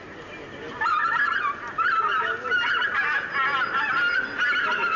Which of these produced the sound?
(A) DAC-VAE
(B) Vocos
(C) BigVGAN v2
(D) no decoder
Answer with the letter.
D